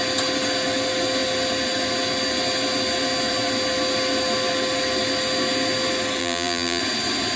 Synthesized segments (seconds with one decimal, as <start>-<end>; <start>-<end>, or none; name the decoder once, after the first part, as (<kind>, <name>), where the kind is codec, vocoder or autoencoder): 6.2-6.8 (vocoder, BigVGAN v2)